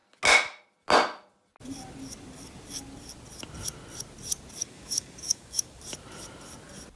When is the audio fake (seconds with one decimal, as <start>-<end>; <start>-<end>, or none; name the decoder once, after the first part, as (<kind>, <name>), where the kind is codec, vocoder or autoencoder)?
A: 4.6-5.8 (codec, DAC)